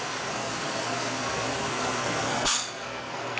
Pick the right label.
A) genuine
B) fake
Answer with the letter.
B